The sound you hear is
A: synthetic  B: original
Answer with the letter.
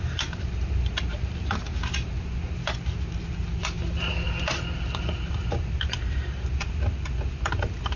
B